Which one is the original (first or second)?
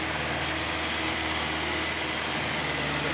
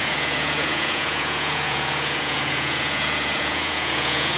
first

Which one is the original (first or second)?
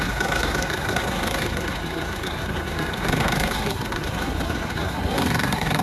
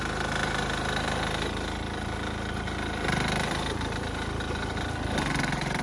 second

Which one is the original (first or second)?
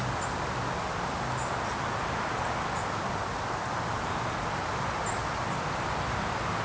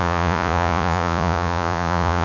first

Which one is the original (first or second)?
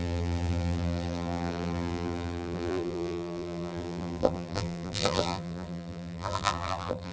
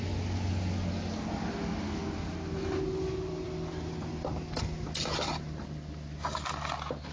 second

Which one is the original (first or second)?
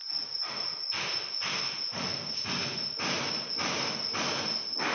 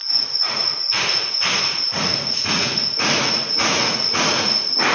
first